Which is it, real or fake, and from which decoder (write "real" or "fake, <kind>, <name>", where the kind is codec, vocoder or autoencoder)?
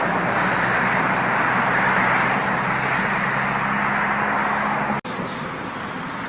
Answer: real